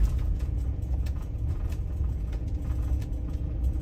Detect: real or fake fake